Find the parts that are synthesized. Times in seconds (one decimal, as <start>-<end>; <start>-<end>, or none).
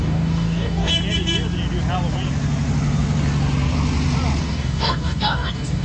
0.0-0.9; 4.4-5.8